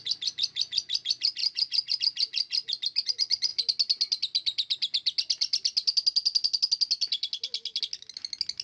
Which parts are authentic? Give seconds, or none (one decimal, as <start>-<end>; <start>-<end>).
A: 0.0-8.6